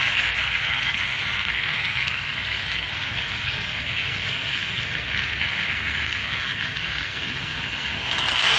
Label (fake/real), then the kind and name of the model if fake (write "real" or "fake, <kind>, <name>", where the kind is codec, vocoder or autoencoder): fake, codec, SNAC